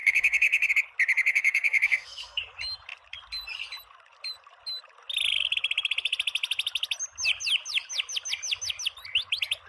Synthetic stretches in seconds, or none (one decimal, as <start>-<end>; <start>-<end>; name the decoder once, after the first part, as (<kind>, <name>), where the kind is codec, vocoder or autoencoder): 0.0-0.7 (codec, SNAC); 1.3-2.4